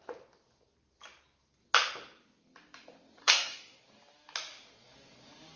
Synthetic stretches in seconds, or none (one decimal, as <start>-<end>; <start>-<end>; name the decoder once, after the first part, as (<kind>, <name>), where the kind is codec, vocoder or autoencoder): 3.2-3.8 (codec, SNAC)